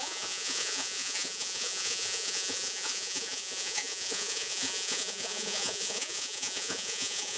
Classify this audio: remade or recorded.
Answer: remade